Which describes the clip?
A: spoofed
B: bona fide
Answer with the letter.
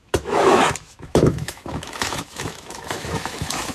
A